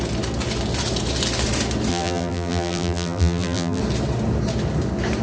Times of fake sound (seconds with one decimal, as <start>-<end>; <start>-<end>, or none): 1.9-3.8